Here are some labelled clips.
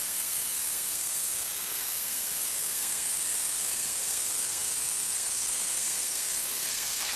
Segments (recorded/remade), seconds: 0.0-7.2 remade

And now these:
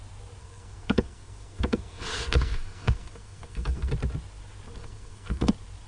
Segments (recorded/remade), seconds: 0.0-0.4 recorded; 0.4-3.9 remade; 3.9-4.8 recorded; 4.8-5.5 remade; 5.5-5.9 recorded

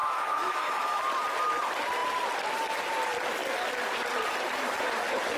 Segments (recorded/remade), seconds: 0.0-1.0 remade; 1.0-5.4 recorded

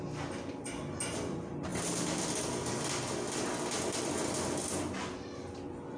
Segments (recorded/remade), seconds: 0.0-6.0 recorded

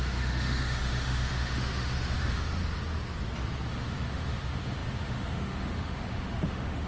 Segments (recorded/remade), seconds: 0.0-2.6 remade; 2.6-3.7 recorded; 3.7-6.9 remade